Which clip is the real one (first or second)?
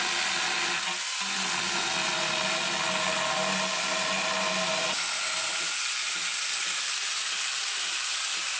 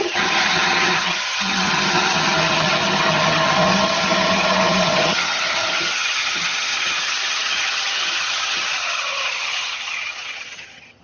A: first